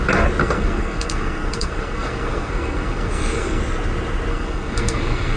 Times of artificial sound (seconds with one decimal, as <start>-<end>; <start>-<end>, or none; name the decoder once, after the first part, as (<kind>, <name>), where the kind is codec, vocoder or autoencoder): 0.4-3.6 (codec, SNAC); 4.3-5.4